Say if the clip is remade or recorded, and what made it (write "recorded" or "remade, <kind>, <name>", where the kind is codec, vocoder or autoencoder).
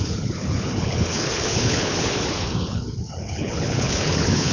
remade, codec, HILCodec